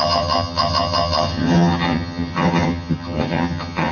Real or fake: fake